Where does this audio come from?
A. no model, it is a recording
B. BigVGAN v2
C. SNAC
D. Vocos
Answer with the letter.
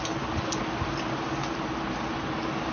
A